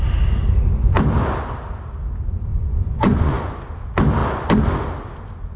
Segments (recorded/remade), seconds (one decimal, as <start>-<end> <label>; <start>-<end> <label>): 0.0-2.5 recorded; 2.5-3.6 remade; 3.6-5.6 recorded

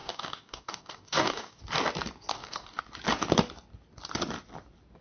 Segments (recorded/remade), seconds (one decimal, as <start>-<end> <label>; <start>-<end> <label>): 0.0-1.6 remade; 1.6-2.3 recorded; 2.3-2.8 remade; 2.8-5.0 recorded

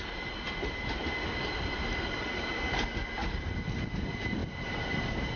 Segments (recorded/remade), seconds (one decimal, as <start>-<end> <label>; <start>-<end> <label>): 0.0-5.4 recorded

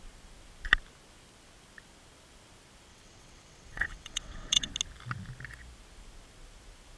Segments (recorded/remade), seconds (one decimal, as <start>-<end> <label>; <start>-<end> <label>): 0.0-2.9 recorded; 2.9-4.7 remade; 4.7-7.0 recorded

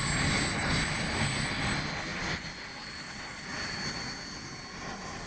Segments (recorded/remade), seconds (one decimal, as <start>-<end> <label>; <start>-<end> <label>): 0.0-5.3 recorded

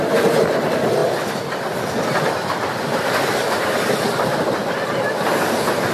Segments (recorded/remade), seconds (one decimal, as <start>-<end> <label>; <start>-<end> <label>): 0.0-1.0 recorded; 1.0-4.5 remade; 4.5-5.9 recorded